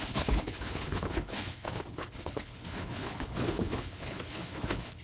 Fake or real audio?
fake